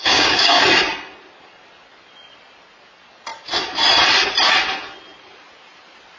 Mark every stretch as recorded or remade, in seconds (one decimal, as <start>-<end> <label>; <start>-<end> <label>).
0.0-0.6 remade; 0.6-6.2 recorded